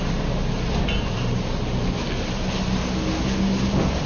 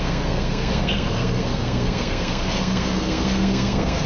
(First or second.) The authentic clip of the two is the first